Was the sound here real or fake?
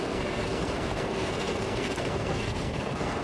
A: fake